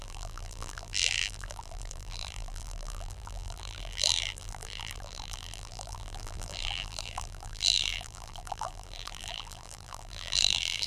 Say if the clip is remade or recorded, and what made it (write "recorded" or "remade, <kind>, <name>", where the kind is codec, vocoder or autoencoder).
remade, vocoder, BigVGAN v2